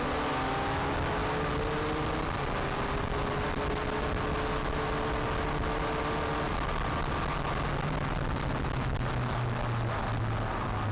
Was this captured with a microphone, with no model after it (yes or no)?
yes